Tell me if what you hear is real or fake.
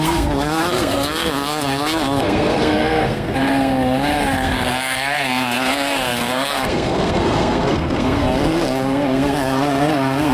fake